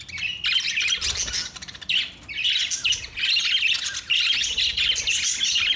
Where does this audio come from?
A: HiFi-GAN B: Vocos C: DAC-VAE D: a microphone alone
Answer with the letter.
D